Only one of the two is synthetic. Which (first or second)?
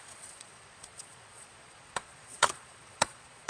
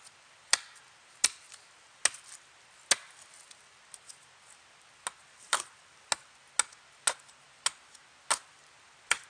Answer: first